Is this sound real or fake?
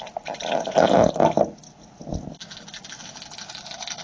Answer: real